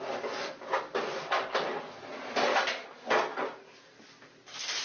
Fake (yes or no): no